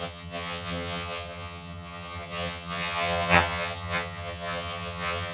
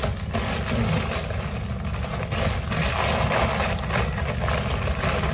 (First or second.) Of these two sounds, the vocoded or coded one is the first